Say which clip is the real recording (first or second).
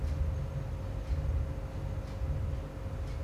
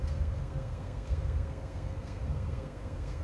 first